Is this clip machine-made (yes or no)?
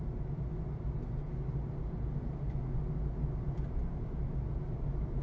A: no